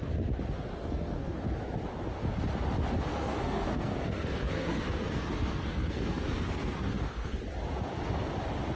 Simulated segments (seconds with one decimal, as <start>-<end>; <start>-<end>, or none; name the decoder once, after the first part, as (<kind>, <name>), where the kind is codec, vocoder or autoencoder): 0.7-1.4 (codec, SNAC); 3.1-7.4